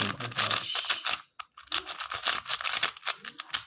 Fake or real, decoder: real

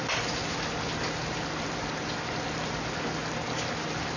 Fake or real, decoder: real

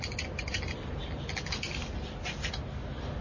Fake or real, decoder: real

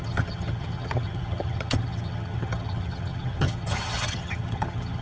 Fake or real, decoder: fake, vocoder, HiFi-GAN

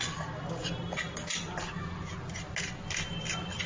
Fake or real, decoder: real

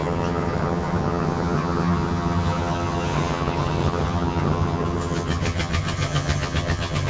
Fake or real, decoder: fake, vocoder, HiFi-GAN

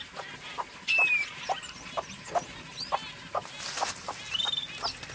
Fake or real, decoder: real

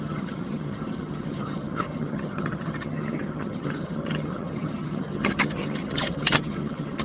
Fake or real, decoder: fake, vocoder, HiFi-GAN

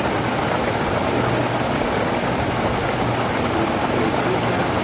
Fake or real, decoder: real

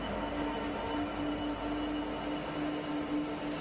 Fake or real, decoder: real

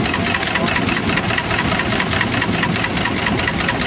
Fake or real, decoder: real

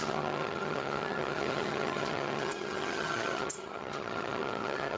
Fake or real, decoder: fake, vocoder, HiFi-GAN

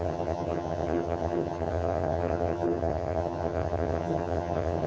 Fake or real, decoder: fake, vocoder, HiFi-GAN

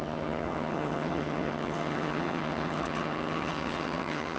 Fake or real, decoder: fake, vocoder, HiFi-GAN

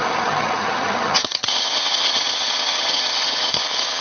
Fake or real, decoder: fake, vocoder, HiFi-GAN